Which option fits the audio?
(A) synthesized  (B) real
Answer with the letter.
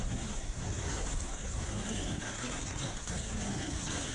A